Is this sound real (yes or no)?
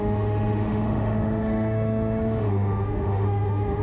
no